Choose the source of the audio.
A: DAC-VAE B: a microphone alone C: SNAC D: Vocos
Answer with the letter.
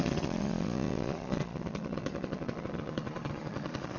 D